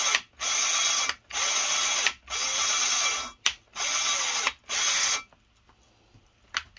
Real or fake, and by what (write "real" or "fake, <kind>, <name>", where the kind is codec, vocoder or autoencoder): real